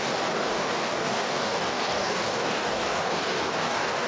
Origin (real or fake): fake